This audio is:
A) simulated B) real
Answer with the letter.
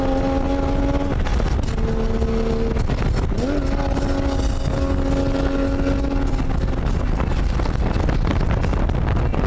B